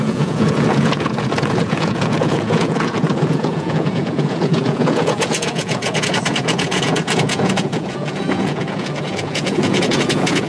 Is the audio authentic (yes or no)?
no